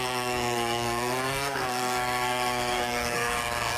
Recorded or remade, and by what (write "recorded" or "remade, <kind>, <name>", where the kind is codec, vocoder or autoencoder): remade, codec, SNAC